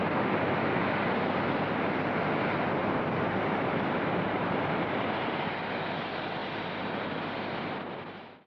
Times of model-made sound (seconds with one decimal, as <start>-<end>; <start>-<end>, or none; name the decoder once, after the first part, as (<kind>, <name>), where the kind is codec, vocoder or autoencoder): 2.8-4.7 (vocoder, BigVGAN v2)